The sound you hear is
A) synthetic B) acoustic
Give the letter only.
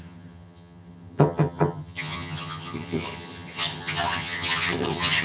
A